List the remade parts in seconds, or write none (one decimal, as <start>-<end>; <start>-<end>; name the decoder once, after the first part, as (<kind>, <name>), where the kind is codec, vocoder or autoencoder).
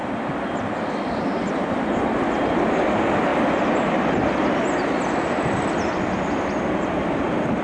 none